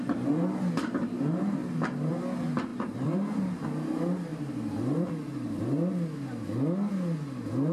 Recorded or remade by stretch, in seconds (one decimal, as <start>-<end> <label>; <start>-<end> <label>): 0.0-1.6 recorded; 1.6-2.1 remade; 2.1-2.7 recorded; 2.7-3.6 remade; 3.6-4.3 recorded; 4.3-5.1 remade; 5.1-7.7 recorded